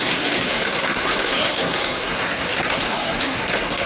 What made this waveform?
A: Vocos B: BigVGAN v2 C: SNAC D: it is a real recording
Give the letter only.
C